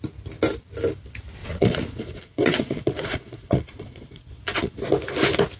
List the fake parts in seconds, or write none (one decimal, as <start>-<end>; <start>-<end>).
1.4-4.8